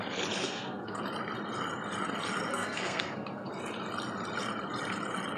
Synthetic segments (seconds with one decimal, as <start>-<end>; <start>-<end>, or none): 0.4-1.0; 2.5-3.5